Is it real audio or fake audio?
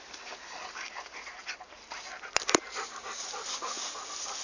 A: real